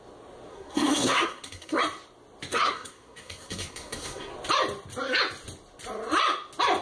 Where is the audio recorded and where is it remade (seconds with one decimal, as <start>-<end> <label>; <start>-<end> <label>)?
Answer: 0.0-0.5 recorded; 0.5-1.8 remade; 1.8-2.5 recorded; 2.5-4.3 remade; 4.3-6.8 recorded

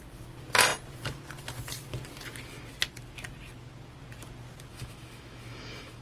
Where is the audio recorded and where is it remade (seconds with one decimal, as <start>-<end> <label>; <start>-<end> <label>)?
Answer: 0.0-4.7 recorded; 4.7-6.0 remade

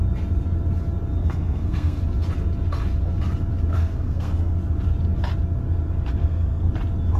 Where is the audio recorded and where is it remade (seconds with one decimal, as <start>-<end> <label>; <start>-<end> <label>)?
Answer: 0.0-1.2 recorded; 1.2-2.0 remade; 2.0-3.7 recorded; 3.7-4.5 remade; 4.5-6.2 recorded; 6.2-6.7 remade; 6.7-7.2 recorded

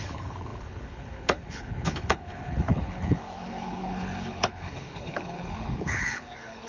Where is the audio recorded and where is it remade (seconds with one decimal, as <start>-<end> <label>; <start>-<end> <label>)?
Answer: 0.0-6.7 remade

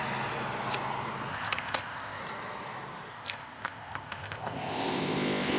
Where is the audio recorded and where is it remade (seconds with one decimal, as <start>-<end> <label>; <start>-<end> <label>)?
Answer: 0.0-1.3 recorded; 1.3-2.2 remade; 2.2-3.1 recorded; 3.1-5.6 remade

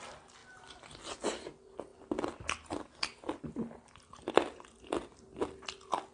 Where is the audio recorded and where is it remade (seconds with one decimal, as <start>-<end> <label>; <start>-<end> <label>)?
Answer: 0.0-6.1 recorded

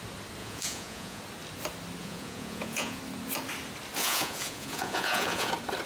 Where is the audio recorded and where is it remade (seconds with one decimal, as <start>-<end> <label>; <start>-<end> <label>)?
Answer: 0.0-0.4 recorded; 0.4-1.2 remade; 1.2-2.0 recorded; 2.0-3.0 remade; 3.0-4.0 recorded; 4.0-5.5 remade; 5.5-5.9 recorded